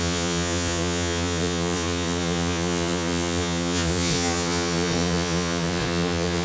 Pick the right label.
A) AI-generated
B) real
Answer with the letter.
A